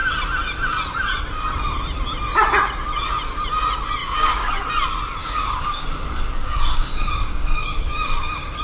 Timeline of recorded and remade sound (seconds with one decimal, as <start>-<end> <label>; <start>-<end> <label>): 0.0-4.0 recorded; 4.0-4.6 remade; 4.6-5.2 recorded; 5.2-8.6 remade